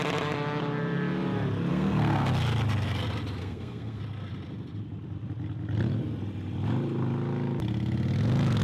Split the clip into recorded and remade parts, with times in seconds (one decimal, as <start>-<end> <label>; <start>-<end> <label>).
0.0-1.7 recorded; 1.7-2.3 remade; 2.3-3.4 recorded; 3.4-4.0 remade; 4.0-8.6 recorded